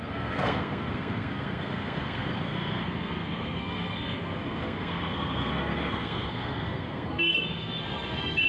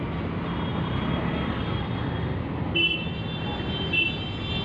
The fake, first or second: first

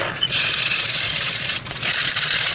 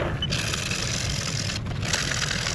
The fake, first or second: first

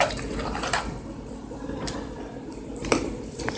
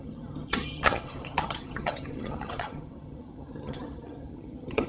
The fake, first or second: second